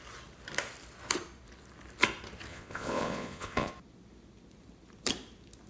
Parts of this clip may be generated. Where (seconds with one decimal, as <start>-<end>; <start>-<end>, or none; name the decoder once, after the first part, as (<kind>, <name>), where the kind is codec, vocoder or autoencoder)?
2.5-3.7 (vocoder, Vocos)